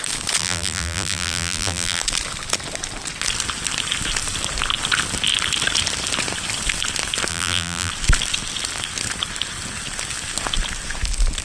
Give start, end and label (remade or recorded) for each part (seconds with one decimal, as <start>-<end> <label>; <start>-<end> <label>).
0.0-0.4 recorded; 0.4-2.0 remade; 2.0-7.3 recorded; 7.3-7.9 remade; 7.9-11.4 recorded